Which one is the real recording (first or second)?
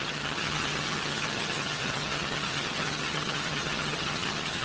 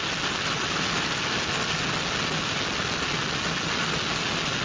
second